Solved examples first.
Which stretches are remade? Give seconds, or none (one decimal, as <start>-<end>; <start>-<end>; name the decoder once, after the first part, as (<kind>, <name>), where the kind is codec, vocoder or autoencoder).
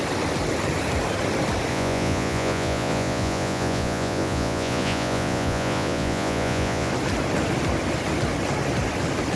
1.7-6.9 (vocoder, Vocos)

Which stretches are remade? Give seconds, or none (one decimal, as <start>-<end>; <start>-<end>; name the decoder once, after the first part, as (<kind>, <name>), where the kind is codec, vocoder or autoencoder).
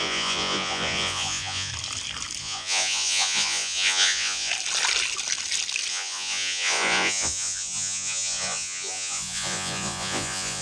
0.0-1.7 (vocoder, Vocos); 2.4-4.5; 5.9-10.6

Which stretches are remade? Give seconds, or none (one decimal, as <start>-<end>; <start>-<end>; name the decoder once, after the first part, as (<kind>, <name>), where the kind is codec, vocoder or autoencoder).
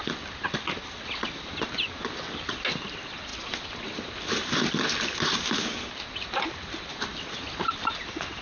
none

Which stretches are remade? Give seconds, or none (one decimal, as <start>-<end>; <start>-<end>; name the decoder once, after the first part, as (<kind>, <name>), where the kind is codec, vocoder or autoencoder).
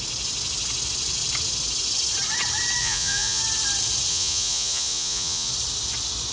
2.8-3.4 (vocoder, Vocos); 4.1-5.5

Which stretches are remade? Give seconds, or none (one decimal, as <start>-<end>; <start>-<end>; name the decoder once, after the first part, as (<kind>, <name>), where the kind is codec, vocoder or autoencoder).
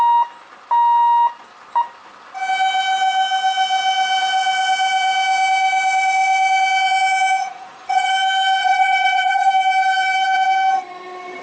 7.4-8.1 (vocoder, Vocos); 8.6-9.5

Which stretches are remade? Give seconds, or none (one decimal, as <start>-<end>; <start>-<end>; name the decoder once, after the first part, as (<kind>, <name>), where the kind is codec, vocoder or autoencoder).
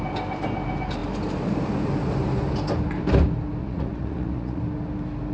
3.6-4.6 (vocoder, Vocos)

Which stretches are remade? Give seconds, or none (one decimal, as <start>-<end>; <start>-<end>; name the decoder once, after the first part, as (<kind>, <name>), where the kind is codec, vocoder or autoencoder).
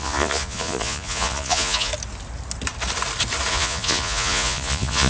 0.0-1.9 (vocoder, Vocos); 3.5-5.1